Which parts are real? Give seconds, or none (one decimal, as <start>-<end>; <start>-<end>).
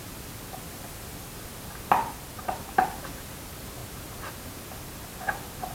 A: 0.0-5.7